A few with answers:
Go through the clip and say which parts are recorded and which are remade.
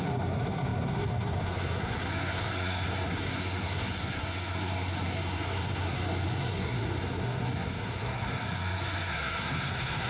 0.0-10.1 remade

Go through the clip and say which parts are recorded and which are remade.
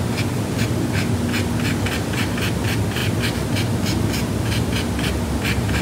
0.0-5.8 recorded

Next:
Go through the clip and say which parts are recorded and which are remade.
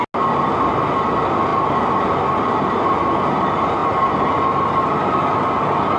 0.0-6.0 recorded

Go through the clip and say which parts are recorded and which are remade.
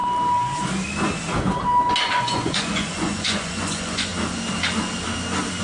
0.0-2.0 recorded; 2.0-4.1 remade; 4.1-5.6 recorded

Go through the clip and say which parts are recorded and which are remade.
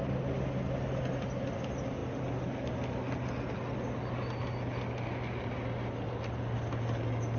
0.0-7.4 recorded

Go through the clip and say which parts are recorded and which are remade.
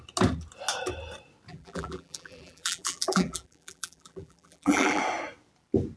0.0-1.5 recorded; 1.5-5.0 remade; 5.0-6.0 recorded